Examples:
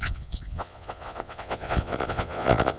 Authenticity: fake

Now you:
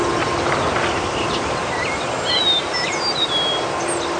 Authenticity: real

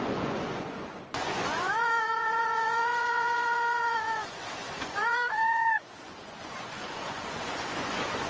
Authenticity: fake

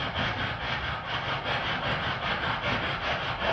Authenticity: real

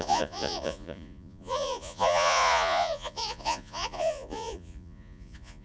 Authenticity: fake